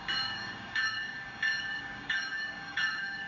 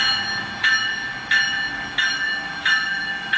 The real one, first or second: second